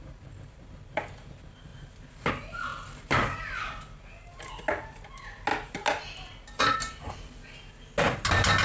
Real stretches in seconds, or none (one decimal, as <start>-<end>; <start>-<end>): 0.0-8.6